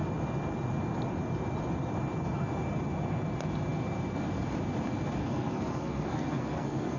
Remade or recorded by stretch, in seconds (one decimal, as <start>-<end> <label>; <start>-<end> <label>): 0.0-5.2 recorded; 5.2-7.0 remade